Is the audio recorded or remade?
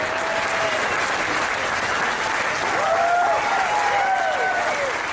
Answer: recorded